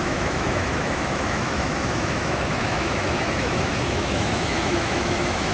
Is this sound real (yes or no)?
no